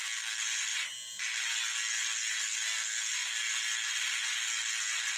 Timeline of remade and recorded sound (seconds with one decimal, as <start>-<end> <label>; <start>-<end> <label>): 0.0-5.2 recorded